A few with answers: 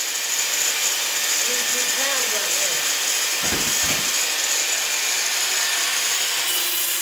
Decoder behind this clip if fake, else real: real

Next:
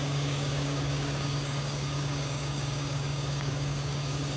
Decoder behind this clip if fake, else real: fake, codec, DAC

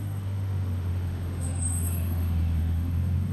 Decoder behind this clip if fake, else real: fake, autoencoder, DAC-VAE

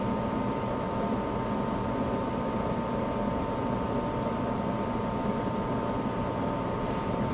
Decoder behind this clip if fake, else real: real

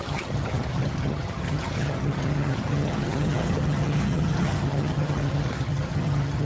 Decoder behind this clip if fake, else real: fake, vocoder, HiFi-GAN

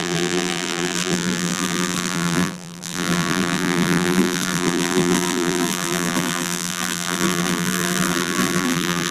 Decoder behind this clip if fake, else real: fake, vocoder, BigVGAN v2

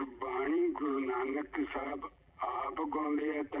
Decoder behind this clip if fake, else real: fake, vocoder, BigVGAN v2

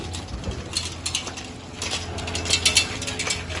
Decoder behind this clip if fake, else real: real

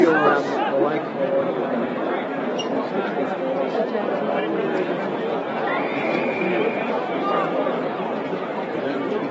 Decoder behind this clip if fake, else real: real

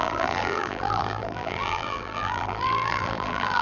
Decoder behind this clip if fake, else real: fake, vocoder, BigVGAN v2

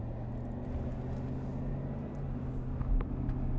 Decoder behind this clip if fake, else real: real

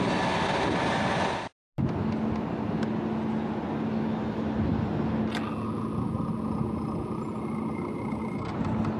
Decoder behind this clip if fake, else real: real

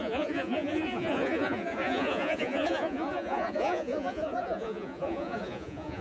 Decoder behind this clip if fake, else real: fake, vocoder, Vocos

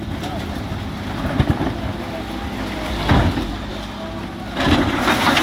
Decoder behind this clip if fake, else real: real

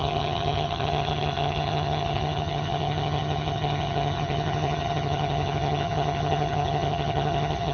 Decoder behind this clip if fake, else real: fake, vocoder, HiFi-GAN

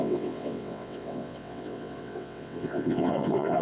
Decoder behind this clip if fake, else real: fake, vocoder, WaveNeXt